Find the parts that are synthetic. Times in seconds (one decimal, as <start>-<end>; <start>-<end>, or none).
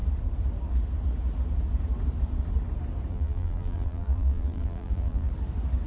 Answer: 3.1-5.3